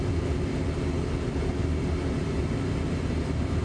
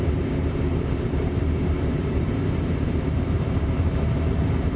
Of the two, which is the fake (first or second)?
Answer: second